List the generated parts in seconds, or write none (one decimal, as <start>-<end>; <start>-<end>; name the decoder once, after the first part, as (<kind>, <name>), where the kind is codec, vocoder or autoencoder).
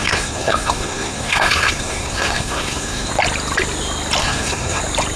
0.0-3.1 (codec, SNAC); 4.2-4.8